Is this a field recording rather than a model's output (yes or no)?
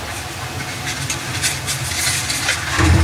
yes